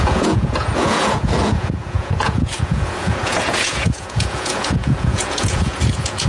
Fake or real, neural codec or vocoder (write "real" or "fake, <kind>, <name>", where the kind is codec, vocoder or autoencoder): fake, vocoder, Vocos